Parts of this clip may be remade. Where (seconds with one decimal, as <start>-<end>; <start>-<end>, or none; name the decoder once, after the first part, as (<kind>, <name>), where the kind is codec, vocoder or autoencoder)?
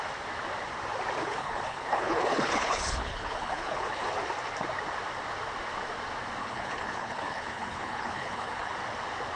1.2-4.1 (codec, HILCodec); 6.4-8.7